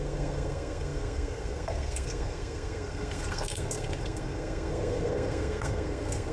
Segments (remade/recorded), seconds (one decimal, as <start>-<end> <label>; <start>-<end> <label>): 0.0-6.3 remade